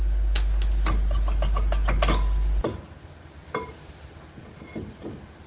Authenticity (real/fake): real